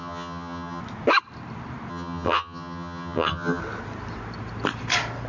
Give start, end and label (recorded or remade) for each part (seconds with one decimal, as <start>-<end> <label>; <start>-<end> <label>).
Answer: 0.0-0.8 remade; 0.8-1.9 recorded; 1.9-3.6 remade; 3.6-5.3 recorded